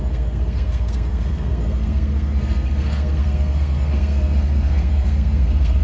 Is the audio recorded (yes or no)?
no